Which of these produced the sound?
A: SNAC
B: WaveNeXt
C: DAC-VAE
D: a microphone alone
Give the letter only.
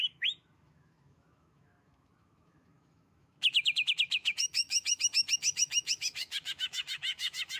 C